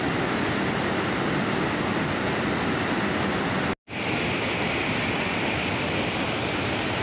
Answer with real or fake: real